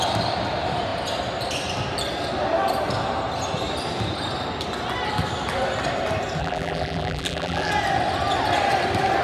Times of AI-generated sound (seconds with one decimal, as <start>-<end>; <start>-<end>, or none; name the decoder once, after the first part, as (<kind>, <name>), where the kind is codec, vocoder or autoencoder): 6.4-7.7 (vocoder, BigVGAN v2)